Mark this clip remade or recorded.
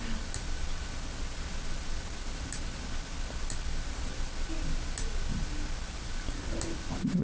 recorded